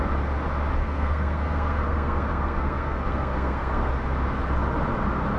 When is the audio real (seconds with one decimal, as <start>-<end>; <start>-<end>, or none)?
0.0-0.8; 3.9-5.4